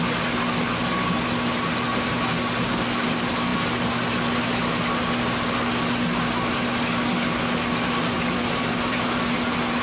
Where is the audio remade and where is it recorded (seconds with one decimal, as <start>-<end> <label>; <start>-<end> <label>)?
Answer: 0.0-9.8 recorded